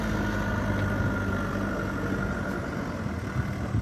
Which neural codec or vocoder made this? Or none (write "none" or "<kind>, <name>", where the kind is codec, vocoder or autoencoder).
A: none